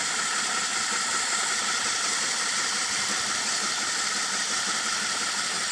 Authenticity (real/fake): fake